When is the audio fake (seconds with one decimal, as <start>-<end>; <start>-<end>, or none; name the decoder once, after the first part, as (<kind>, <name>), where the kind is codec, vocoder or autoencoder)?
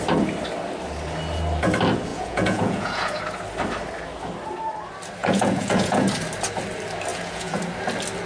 2.1-3.2 (vocoder, Vocos); 5.2-6.1; 7.1-7.6